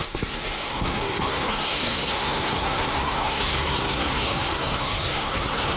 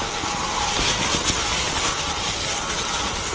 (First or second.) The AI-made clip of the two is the first